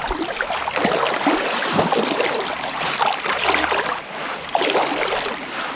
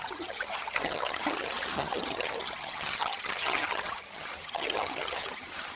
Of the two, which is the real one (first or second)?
first